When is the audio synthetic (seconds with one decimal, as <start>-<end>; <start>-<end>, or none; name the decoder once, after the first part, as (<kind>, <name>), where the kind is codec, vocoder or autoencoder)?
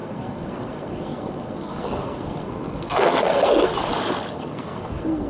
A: 0.0-3.7 (codec, SNAC); 4.3-5.3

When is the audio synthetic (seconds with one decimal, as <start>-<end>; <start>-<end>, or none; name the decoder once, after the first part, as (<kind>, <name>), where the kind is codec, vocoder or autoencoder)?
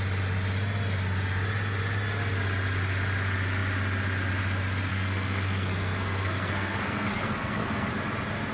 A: 4.9-7.9 (codec, SNAC)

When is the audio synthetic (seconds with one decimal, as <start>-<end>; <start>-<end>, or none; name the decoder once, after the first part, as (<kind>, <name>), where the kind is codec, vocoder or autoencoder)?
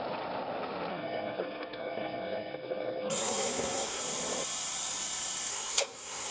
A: 0.9-4.0 (codec, SNAC); 5.5-6.3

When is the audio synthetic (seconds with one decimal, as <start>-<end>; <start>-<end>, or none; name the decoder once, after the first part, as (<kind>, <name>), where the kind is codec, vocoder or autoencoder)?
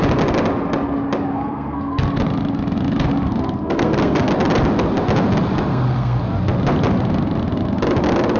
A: 1.3-2.1 (codec, SNAC); 3.3-4.3; 5.7-6.2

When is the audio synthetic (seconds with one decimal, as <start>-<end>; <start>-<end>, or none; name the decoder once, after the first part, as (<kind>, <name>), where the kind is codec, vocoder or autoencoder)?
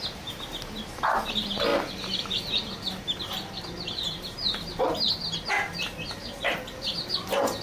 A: none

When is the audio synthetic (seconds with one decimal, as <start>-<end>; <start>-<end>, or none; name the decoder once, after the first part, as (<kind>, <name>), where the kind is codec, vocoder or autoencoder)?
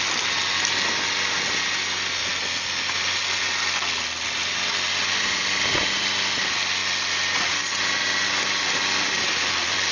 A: none